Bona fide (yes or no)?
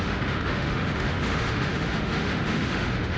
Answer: no